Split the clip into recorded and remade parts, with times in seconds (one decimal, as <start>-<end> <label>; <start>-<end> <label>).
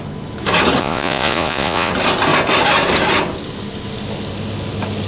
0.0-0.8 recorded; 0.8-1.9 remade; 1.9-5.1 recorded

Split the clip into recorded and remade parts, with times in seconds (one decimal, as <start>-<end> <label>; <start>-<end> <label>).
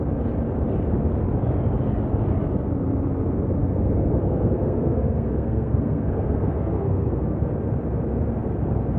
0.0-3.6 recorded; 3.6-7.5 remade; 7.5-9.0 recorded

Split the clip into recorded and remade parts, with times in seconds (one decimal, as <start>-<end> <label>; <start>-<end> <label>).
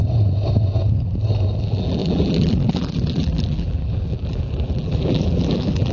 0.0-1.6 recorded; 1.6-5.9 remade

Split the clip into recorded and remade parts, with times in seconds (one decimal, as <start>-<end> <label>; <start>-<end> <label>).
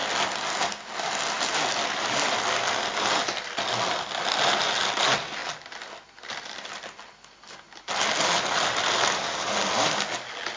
0.0-10.6 recorded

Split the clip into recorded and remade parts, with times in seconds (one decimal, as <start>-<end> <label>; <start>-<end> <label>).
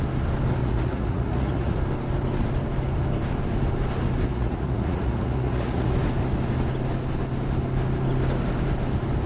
0.0-0.6 recorded; 0.6-1.8 remade; 1.8-4.3 recorded; 4.3-5.9 remade; 5.9-9.3 recorded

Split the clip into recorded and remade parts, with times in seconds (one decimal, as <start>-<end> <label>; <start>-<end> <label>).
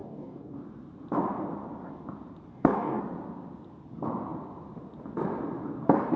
0.0-0.6 remade; 0.6-2.5 recorded; 2.5-3.0 remade; 3.0-6.2 recorded